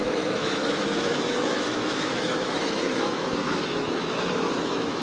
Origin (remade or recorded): remade